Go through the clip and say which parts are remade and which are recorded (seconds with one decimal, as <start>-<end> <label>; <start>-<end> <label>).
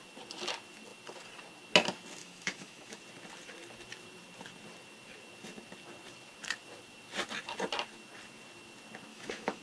0.0-2.2 recorded; 2.2-3.0 remade; 3.0-9.1 recorded; 9.1-9.6 remade